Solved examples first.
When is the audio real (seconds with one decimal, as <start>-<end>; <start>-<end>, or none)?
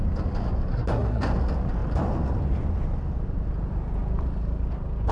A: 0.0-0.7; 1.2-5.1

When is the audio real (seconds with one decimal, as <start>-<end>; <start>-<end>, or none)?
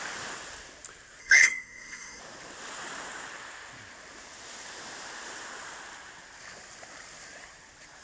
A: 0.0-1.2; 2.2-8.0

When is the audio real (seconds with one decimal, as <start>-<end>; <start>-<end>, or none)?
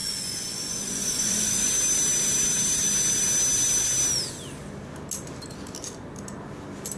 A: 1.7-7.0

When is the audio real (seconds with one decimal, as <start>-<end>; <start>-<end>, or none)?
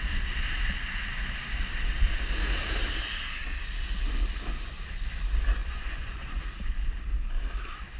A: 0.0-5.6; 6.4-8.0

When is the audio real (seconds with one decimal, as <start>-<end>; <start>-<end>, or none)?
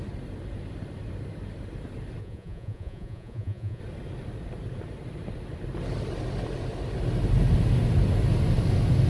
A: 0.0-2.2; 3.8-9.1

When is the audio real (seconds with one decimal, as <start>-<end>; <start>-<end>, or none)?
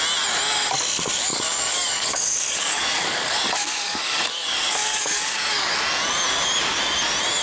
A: 0.0-1.3; 5.7-7.4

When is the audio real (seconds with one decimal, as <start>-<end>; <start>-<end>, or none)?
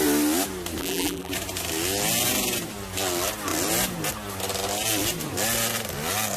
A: 0.0-0.8; 1.3-6.4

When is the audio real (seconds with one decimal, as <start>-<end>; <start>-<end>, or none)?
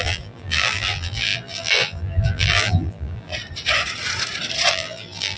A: 3.3-4.7